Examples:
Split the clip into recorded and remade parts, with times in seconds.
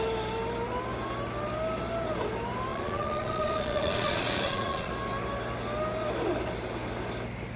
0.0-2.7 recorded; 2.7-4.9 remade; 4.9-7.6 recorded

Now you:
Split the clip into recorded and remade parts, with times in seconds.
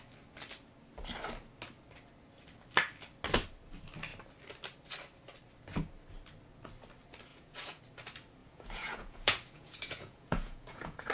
0.0-7.3 recorded; 7.3-7.8 remade; 7.8-8.4 recorded; 8.4-11.1 remade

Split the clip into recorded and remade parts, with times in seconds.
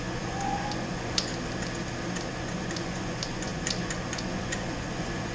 0.0-1.3 remade; 1.3-2.3 recorded; 2.3-5.3 remade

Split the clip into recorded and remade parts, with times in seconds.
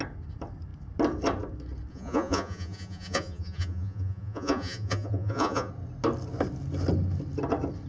0.0-1.9 recorded; 1.9-5.7 remade; 5.7-7.9 recorded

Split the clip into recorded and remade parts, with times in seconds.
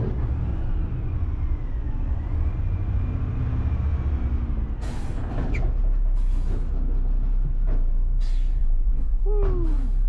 0.0-0.5 recorded; 0.5-3.4 remade; 3.4-8.6 recorded; 8.6-9.2 remade; 9.2-10.1 recorded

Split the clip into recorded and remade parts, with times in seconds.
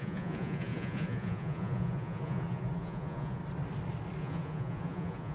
0.0-3.4 remade; 3.4-4.2 recorded; 4.2-5.3 remade